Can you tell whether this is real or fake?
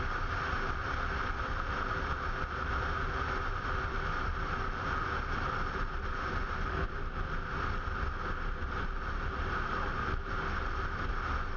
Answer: real